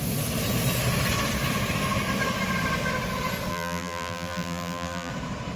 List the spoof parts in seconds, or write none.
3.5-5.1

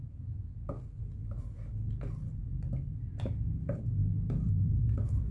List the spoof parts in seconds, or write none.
none

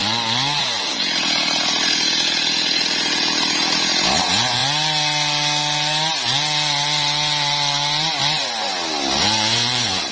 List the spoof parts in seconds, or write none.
0.6-4.6; 9.2-10.1

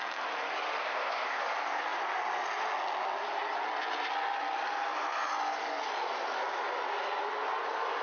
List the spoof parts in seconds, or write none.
0.8-1.4

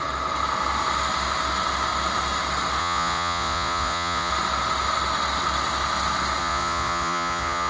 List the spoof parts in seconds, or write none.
2.8-4.3; 6.4-7.7

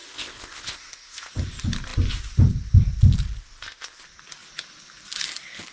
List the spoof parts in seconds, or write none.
0.0-1.3; 3.4-4.0

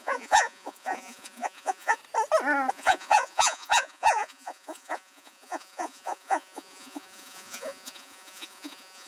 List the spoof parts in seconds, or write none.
0.0-2.0; 2.7-9.1